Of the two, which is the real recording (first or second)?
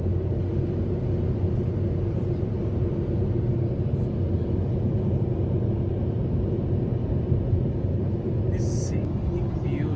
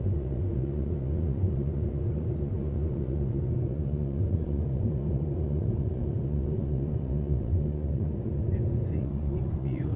first